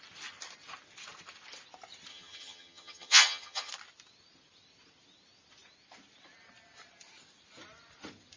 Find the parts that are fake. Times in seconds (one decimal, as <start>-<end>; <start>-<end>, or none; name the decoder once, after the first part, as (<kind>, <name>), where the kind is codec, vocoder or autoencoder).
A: 2.1-3.7 (vocoder, HiFi-GAN)